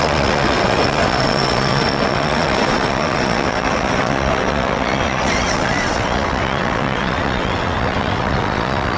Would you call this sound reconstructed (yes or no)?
yes